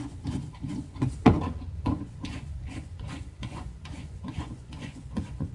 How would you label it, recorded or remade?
remade